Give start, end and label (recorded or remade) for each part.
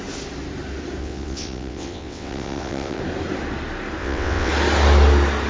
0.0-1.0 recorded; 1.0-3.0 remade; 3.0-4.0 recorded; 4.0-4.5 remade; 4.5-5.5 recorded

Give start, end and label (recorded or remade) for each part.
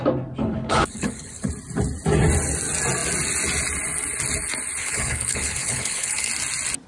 0.0-0.4 recorded; 0.4-1.5 remade; 1.5-4.8 recorded; 4.8-6.3 remade; 6.3-6.9 recorded